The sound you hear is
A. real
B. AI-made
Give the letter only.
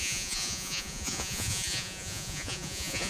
B